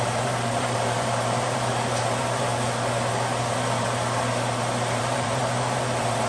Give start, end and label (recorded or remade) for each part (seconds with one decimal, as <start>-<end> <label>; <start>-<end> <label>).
0.0-2.5 remade; 2.5-5.0 recorded; 5.0-6.3 remade